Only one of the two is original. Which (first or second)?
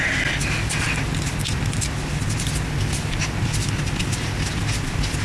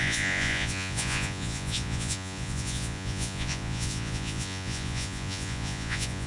first